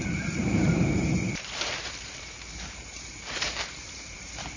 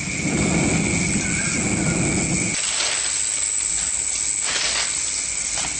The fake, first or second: first